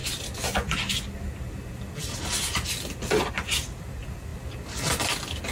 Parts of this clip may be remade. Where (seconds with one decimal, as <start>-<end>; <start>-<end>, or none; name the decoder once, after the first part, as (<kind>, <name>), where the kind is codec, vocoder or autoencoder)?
3.3-4.3 (vocoder, BigVGAN v2); 5.0-5.5

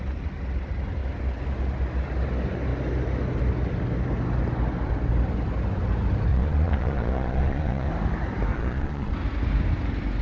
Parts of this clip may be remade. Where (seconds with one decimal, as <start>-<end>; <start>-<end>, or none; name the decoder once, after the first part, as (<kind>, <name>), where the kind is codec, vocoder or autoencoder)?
6.3-7.9 (vocoder, Vocos); 8.5-9.1

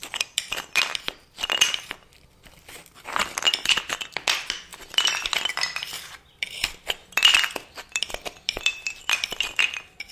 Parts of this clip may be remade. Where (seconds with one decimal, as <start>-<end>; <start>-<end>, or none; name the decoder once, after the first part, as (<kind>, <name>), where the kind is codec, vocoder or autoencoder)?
none

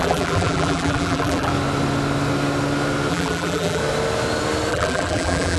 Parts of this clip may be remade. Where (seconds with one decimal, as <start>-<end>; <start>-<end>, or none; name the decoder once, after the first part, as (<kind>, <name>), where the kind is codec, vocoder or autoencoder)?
0.0-1.5 (vocoder, BigVGAN v2); 3.1-3.8; 4.7-5.6

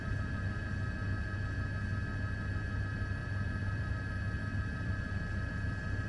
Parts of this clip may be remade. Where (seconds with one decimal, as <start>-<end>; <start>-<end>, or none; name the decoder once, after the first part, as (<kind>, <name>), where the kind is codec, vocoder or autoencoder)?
0.0-0.7 (vocoder, BigVGAN v2); 3.2-3.9; 4.5-5.5

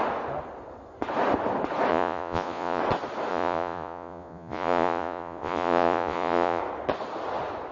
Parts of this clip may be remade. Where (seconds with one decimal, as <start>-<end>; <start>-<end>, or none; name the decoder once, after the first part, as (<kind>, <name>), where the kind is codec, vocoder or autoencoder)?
1.9-2.8 (vocoder, Vocos); 3.3-6.6

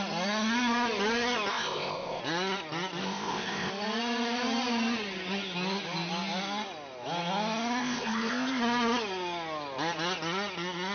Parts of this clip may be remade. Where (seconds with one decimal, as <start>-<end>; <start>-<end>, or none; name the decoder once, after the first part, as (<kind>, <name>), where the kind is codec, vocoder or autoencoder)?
1.5-2.2 (codec, ZipCodec); 3.0-3.7; 7.8-8.6